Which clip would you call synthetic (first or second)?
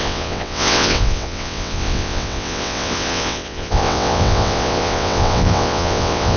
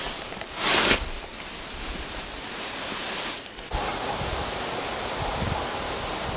first